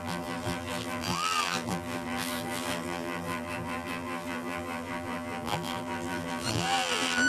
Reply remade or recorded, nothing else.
remade